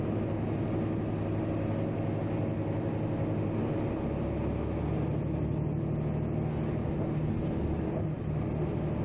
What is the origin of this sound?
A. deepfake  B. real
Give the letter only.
B